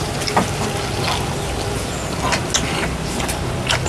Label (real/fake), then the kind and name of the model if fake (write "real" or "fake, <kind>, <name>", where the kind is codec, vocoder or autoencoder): real